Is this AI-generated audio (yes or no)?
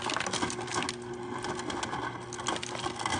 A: no